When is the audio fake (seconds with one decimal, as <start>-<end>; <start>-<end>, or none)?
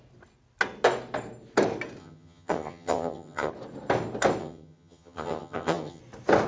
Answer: 2.0-3.5; 4.4-6.0